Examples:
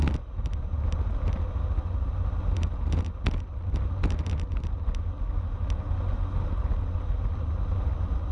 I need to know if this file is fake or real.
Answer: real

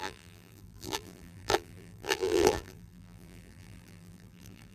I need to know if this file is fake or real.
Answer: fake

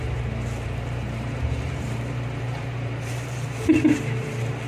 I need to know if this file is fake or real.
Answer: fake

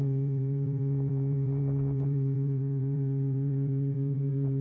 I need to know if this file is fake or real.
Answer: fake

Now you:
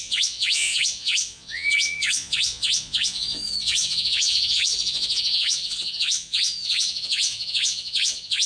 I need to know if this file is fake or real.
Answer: fake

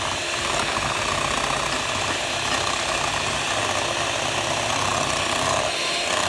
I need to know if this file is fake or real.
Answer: real